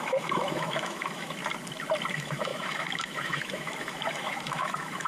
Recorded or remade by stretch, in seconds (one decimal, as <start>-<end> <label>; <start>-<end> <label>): 0.0-1.4 remade; 1.4-2.1 recorded; 2.1-5.1 remade